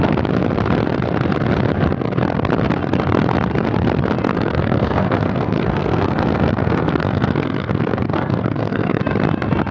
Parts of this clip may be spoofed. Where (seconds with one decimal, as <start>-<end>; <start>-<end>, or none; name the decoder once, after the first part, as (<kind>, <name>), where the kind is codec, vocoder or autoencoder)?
4.3-9.0 (codec, SNAC)